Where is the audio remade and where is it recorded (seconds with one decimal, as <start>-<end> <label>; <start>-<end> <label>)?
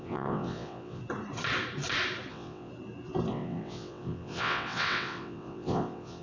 0.0-1.0 remade; 1.0-2.3 recorded; 2.3-2.7 remade; 2.7-3.3 recorded; 3.3-6.2 remade